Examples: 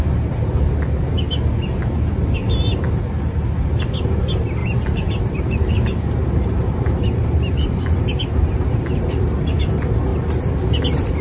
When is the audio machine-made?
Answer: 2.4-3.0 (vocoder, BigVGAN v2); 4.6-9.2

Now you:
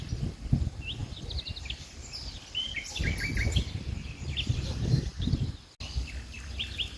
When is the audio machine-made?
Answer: none

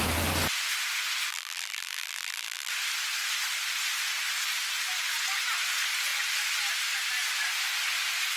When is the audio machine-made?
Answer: 1.3-2.7 (vocoder, BigVGAN v2)

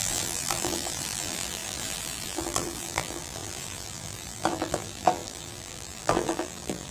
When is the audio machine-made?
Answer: 0.0-6.9 (vocoder, BigVGAN v2)

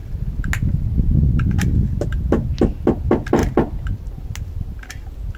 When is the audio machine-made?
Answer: none

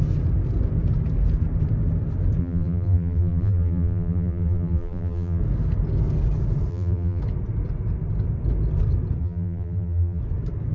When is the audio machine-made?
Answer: 2.4-5.4 (vocoder, BigVGAN v2); 6.7-7.2; 9.2-10.2